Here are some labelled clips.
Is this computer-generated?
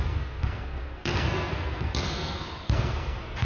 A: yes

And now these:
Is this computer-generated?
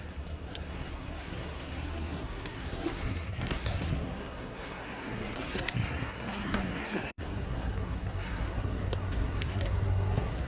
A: yes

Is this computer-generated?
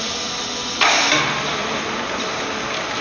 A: no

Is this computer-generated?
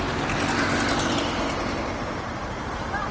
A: no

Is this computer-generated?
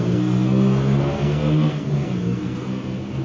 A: yes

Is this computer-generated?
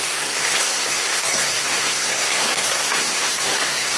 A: yes